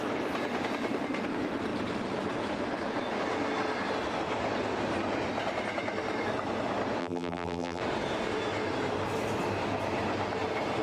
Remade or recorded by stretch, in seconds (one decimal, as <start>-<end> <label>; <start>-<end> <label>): 0.0-7.0 recorded; 7.0-7.8 remade; 7.8-10.8 recorded